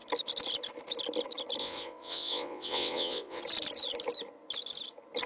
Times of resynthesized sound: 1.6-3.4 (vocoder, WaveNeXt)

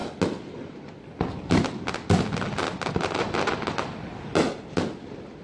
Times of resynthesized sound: none

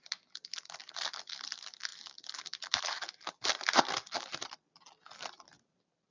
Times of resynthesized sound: none